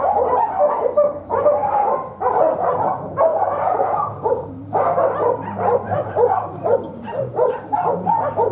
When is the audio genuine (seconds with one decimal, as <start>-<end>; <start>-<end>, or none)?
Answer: 0.0-3.3